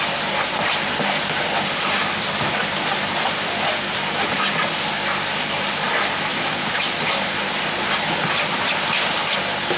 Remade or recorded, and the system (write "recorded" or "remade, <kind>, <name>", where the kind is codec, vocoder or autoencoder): recorded